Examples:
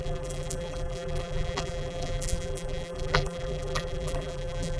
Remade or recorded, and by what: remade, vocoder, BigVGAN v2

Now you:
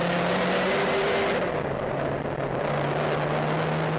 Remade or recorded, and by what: recorded